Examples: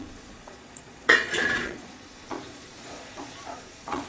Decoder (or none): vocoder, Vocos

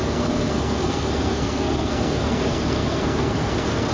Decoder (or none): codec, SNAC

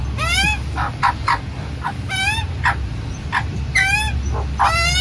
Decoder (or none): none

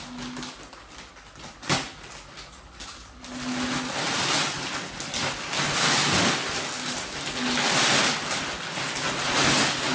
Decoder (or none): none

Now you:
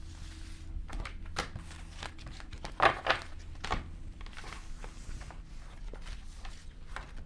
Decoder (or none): none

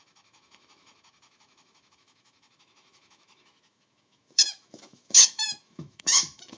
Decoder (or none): autoencoder, DAC-VAE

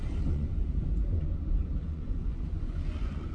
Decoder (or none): vocoder, Vocos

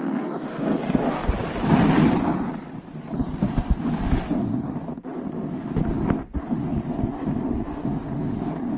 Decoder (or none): none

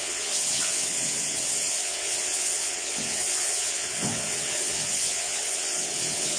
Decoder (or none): vocoder, WaveNeXt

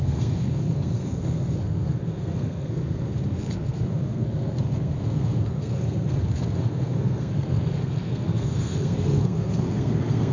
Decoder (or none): codec, SNAC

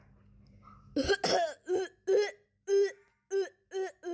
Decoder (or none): none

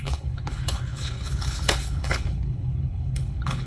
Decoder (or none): codec, HILCodec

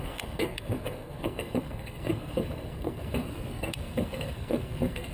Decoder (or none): codec, SNAC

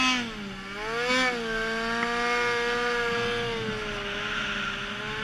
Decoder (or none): none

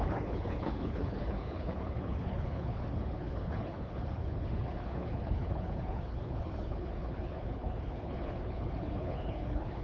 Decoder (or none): codec, HILCodec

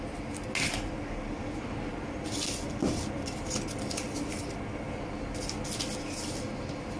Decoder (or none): none